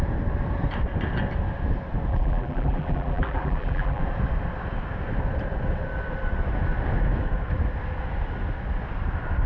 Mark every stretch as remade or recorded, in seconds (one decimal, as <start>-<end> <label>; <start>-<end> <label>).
0.0-2.1 recorded; 2.1-4.0 remade; 4.0-9.5 recorded